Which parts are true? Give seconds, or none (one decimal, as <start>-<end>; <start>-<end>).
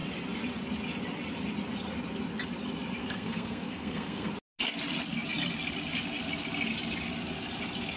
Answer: 0.0-3.0; 4.3-8.0